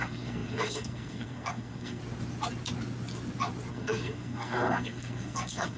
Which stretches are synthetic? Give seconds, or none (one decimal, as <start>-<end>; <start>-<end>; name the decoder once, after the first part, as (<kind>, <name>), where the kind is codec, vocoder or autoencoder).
0.0-2.0 (codec, SNAC); 3.7-5.8

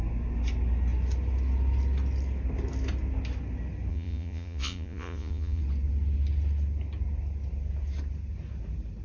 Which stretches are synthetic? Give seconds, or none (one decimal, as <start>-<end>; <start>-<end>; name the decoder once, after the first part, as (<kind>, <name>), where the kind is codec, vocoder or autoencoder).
3.9-5.6 (vocoder, Vocos)

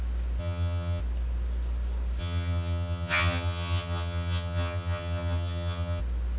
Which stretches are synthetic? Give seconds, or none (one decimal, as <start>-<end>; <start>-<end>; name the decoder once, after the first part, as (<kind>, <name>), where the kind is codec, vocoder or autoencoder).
0.4-1.0 (vocoder, HiFi-GAN); 2.2-6.0